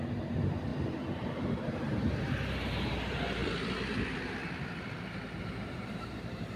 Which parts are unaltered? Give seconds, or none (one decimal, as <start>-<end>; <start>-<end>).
3.4-5.4